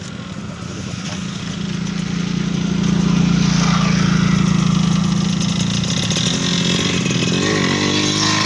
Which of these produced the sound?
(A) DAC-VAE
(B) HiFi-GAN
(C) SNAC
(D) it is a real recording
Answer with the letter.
D